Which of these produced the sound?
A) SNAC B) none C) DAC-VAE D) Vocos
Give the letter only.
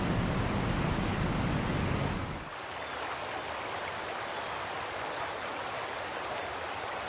B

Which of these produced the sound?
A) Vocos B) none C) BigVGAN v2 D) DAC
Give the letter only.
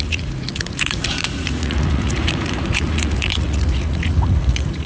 A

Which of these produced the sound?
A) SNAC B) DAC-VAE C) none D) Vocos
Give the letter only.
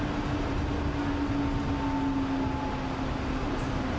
C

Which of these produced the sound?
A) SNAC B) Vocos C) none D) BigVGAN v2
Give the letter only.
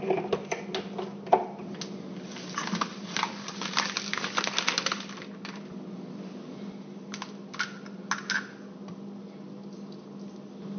C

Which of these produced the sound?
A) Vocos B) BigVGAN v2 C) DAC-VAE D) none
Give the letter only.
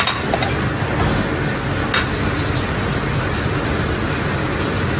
D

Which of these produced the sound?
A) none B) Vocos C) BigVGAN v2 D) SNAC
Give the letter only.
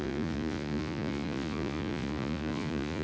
B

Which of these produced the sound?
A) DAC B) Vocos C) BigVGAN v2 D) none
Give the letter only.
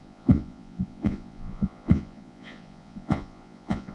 B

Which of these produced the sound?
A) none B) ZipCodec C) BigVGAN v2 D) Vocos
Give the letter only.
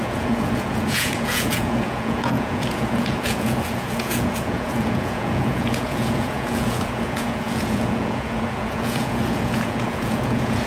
D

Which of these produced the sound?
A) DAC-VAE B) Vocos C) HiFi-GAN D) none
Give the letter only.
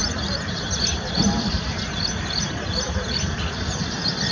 D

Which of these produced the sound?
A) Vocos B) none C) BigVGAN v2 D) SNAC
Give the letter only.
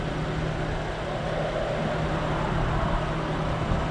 B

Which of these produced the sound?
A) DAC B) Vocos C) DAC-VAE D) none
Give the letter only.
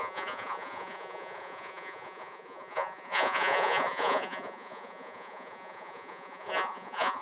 B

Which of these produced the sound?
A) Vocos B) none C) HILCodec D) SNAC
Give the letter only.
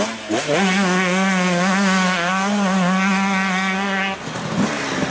B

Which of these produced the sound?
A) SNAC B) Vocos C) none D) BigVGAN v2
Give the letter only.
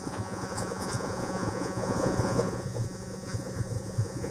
B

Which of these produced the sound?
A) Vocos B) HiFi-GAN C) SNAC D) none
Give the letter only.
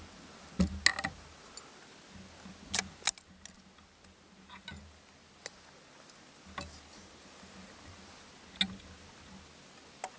D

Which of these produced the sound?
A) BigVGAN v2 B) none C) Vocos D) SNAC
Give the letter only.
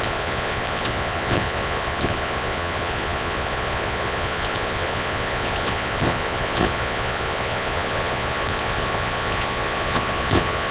C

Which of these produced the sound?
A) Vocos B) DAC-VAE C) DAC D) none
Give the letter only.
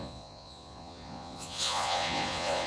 A